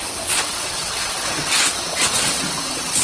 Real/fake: fake